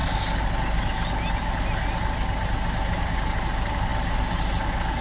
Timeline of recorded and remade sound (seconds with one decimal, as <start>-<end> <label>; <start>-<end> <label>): 0.0-5.0 recorded